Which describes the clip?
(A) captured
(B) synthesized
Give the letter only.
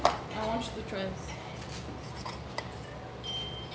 A